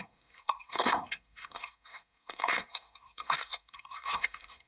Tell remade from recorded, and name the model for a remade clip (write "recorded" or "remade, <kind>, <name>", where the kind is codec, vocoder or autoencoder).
remade, codec, SNAC